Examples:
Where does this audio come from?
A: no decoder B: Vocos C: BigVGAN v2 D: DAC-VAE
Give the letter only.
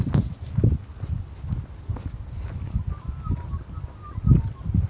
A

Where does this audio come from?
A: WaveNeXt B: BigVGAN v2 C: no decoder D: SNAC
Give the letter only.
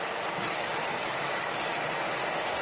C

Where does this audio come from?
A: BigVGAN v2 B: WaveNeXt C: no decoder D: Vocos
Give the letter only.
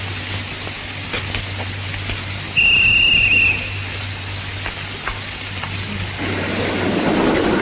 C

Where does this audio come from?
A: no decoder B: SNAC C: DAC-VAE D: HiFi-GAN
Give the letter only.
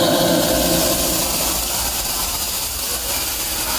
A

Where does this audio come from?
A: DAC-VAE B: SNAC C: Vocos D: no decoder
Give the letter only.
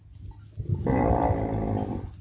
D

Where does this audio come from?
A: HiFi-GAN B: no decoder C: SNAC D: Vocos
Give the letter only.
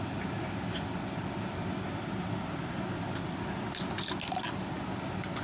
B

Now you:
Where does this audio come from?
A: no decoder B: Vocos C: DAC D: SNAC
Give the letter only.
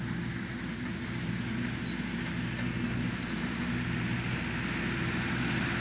A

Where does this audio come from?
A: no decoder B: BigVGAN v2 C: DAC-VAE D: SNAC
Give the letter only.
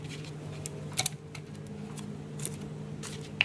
A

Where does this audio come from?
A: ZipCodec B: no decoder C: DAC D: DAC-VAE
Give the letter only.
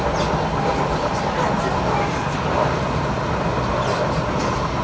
B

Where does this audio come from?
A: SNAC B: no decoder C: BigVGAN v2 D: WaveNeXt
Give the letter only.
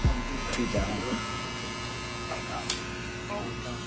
B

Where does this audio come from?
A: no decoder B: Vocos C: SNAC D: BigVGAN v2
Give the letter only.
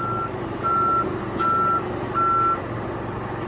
A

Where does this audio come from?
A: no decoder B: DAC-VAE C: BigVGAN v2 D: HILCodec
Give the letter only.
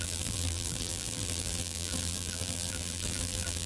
C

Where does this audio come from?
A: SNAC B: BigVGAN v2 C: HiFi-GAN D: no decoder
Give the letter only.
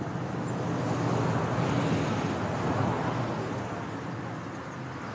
D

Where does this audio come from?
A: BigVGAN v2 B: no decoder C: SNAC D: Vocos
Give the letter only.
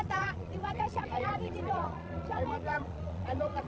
D